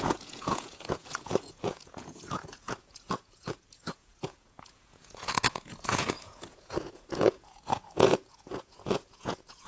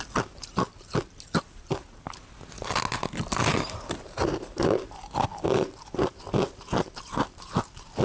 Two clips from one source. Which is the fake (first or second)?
first